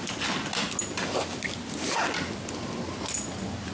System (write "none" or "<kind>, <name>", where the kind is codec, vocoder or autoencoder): none